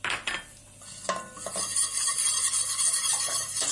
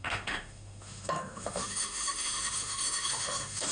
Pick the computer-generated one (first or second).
second